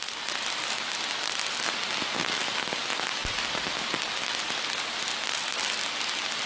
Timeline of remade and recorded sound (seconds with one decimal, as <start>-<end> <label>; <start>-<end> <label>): 0.0-6.5 recorded